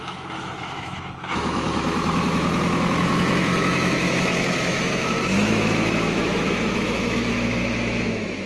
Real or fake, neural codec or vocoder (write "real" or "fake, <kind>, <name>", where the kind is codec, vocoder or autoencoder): fake, autoencoder, DAC-VAE